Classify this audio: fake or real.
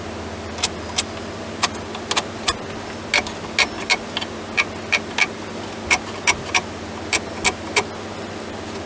real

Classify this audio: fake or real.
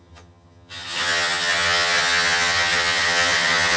fake